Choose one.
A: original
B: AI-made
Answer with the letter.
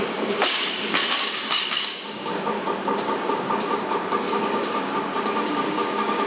B